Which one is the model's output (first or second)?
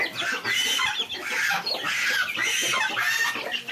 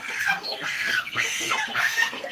second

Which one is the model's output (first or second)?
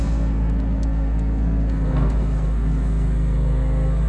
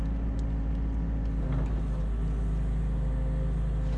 first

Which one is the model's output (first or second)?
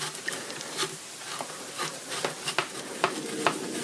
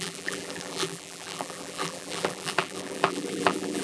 second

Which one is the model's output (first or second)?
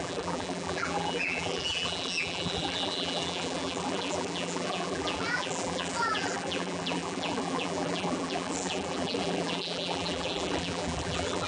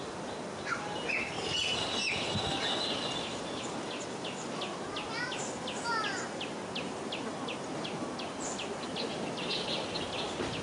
first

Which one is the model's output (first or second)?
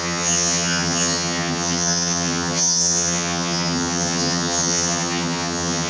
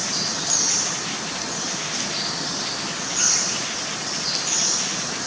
first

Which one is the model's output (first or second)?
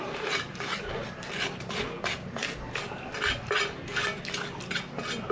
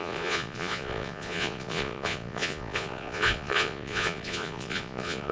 second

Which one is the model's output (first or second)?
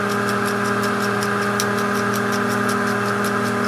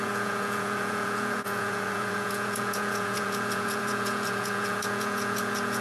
second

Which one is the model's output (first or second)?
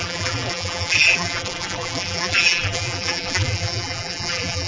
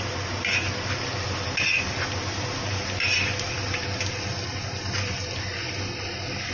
first